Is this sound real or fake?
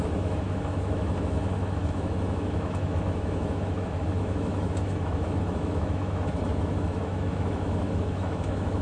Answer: fake